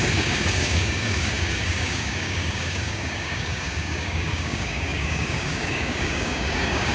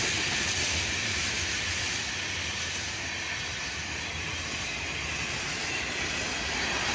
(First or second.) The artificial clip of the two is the first